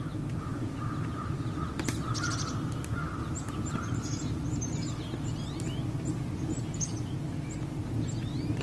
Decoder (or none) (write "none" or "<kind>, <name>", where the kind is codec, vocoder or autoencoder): none